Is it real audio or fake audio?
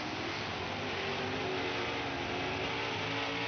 real